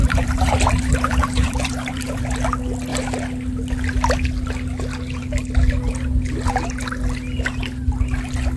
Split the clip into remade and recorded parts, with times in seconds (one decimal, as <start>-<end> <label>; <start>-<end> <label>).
0.0-2.2 remade; 2.2-8.6 recorded